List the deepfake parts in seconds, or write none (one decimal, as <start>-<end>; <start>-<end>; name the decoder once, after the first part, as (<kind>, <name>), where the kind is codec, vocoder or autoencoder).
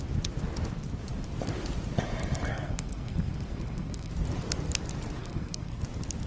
2.5-4.1 (codec, SNAC); 5.2-5.8